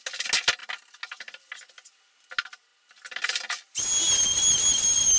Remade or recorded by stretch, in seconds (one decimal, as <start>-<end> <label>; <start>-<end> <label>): 0.0-5.2 recorded